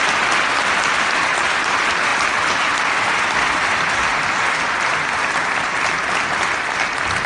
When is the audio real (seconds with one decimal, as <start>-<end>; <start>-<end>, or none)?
0.0-7.3